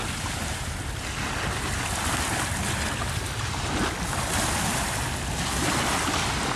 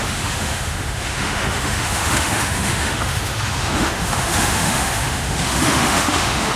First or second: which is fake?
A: second